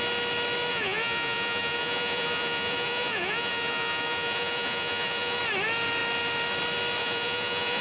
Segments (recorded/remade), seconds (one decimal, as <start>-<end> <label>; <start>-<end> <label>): 0.0-0.7 recorded; 0.7-5.4 remade; 5.4-7.0 recorded; 7.0-7.8 remade

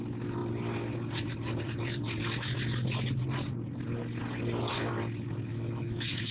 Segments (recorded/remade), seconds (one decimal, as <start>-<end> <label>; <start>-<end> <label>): 0.0-5.5 recorded; 5.5-6.3 remade

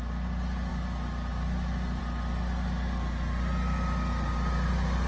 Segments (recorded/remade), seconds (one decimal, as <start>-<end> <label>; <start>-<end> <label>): 0.0-5.1 recorded

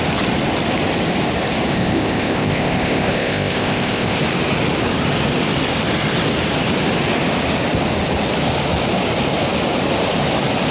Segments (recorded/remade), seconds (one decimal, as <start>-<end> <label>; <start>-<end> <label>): 0.0-1.7 recorded; 1.7-4.2 remade; 4.2-10.7 recorded

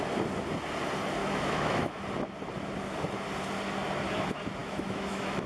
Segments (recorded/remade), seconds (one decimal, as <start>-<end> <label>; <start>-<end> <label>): 0.0-1.2 recorded; 1.2-2.0 remade; 2.0-4.6 recorded; 4.6-5.5 remade